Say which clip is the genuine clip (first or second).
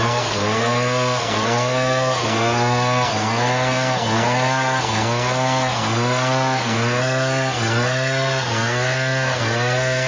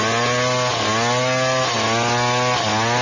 second